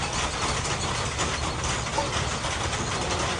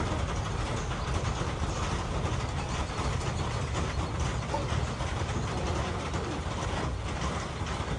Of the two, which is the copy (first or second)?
second